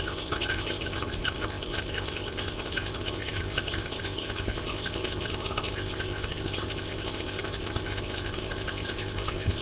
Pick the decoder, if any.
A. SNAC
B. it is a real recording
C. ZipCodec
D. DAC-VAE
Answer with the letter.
C